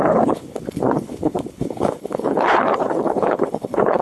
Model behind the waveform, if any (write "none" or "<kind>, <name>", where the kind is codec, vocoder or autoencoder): codec, HILCodec